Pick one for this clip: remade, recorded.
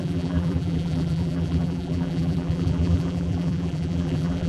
remade